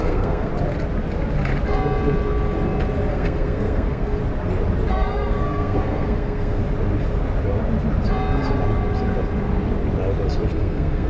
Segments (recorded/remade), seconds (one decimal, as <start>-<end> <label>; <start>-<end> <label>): 0.0-0.5 remade; 0.5-3.1 recorded; 3.1-4.2 remade; 4.2-4.9 recorded; 4.9-6.6 remade; 6.6-10.5 recorded; 10.5-11.1 remade